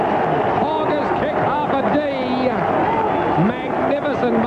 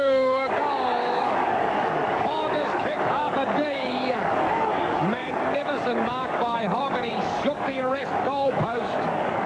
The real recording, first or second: first